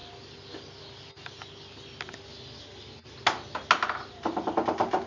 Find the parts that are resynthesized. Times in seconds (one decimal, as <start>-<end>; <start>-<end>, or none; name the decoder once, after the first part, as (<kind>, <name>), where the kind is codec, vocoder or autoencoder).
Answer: none